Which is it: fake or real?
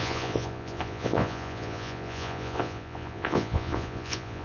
fake